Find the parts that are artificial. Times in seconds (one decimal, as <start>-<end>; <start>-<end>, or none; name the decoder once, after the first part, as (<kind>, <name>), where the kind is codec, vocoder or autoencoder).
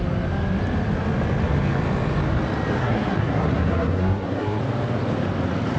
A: 2.8-4.6 (codec, SNAC)